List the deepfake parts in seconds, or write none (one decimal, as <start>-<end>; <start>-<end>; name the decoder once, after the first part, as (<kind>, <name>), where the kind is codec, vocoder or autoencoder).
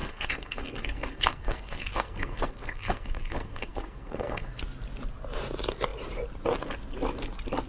0.0-4.6 (codec, SNAC)